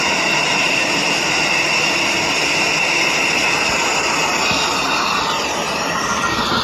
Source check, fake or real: real